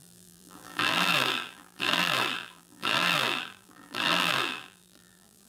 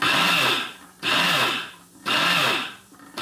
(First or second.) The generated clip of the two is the first